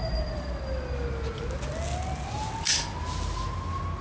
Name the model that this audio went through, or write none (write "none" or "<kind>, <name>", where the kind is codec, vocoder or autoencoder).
none